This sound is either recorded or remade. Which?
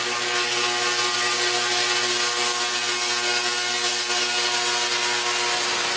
recorded